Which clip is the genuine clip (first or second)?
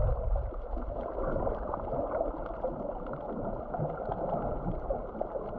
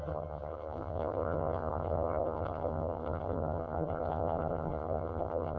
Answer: first